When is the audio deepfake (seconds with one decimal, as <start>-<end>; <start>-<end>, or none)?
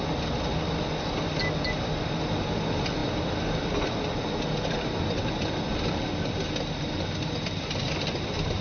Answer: none